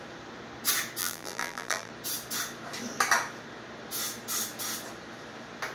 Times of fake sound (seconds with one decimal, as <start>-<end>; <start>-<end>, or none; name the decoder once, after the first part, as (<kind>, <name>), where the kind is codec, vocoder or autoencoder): 1.0-1.9 (vocoder, BigVGAN v2)